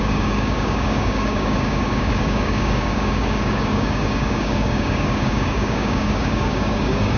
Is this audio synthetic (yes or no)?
yes